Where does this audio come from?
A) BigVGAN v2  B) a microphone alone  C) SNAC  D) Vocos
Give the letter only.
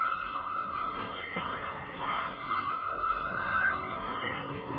C